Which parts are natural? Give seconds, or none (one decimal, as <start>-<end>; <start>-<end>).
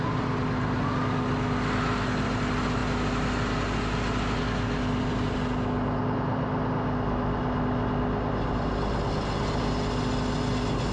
0.0-10.9